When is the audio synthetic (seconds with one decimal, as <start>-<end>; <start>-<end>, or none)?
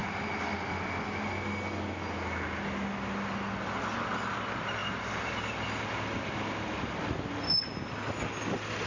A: none